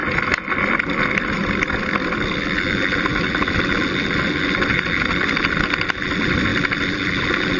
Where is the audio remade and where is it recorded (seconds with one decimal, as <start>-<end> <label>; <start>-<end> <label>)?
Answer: 0.0-7.6 recorded